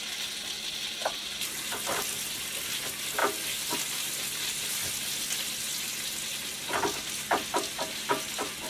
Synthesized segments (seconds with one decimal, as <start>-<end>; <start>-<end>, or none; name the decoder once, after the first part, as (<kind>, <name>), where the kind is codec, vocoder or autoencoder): none